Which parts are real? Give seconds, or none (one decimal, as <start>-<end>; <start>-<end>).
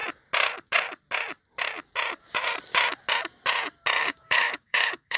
0.0-4.0